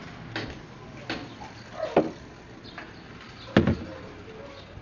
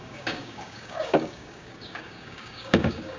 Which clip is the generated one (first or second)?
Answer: second